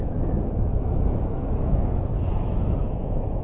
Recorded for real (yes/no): no